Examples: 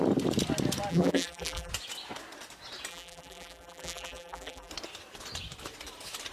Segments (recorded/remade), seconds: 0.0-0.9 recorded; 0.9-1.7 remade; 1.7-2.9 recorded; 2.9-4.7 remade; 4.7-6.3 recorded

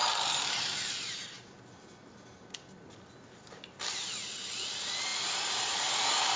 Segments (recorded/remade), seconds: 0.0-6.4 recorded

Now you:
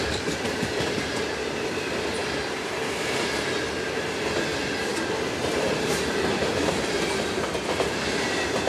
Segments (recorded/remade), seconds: 0.0-2.2 remade; 2.2-3.0 recorded; 3.0-4.5 remade; 4.5-6.2 recorded; 6.2-8.7 remade

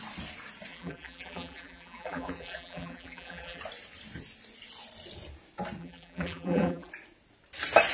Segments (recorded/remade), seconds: 0.0-0.7 recorded; 0.7-3.6 remade; 3.6-5.8 recorded; 5.8-6.9 remade; 6.9-7.9 recorded

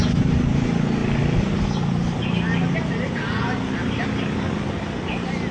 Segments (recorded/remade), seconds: 0.0-5.5 recorded

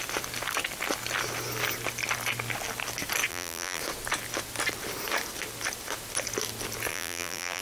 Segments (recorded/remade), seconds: 0.0-3.3 recorded; 3.3-3.8 remade; 3.8-6.9 recorded; 6.9-7.6 remade